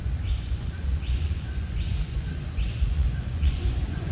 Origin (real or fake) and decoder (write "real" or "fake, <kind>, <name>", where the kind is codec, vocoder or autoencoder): fake, vocoder, Vocos